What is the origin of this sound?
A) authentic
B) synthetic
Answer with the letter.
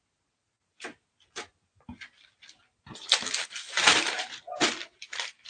A